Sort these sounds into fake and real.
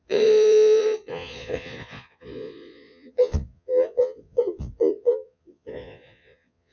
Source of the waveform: fake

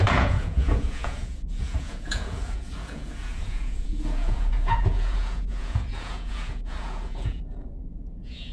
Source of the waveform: fake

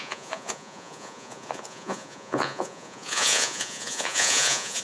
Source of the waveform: fake